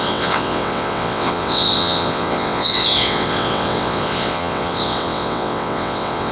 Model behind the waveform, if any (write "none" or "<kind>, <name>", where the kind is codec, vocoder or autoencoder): vocoder, WaveNeXt